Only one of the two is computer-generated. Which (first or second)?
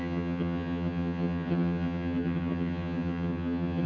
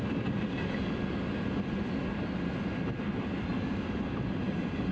first